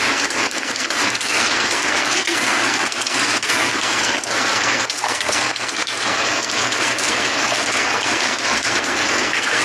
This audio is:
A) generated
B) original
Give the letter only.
A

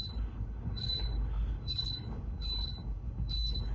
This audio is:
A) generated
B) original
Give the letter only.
A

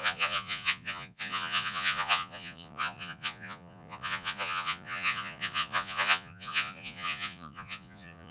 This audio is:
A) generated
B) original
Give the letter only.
A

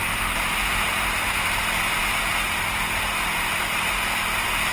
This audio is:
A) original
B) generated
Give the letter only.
A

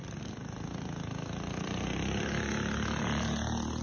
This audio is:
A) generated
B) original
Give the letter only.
B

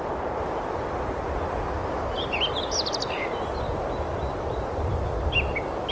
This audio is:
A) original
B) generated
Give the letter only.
A